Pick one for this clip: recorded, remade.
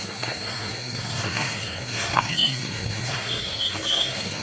remade